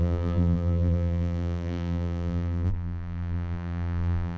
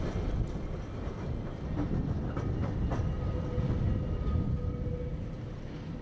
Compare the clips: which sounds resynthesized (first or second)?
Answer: first